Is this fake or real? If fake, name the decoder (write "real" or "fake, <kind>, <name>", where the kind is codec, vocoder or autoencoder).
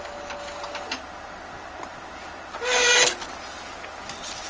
real